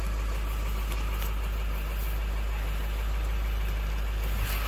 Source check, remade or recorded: recorded